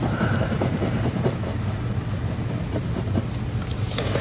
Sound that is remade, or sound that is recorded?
recorded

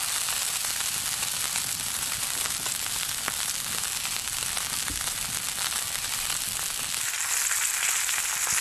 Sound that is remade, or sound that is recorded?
recorded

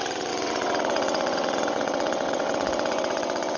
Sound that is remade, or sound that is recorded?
remade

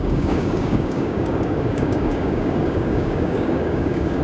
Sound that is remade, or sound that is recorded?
remade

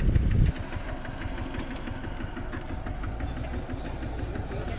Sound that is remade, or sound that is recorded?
recorded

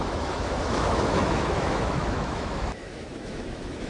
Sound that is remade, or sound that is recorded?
remade